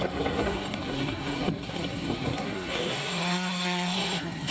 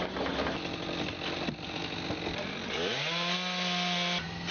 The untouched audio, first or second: second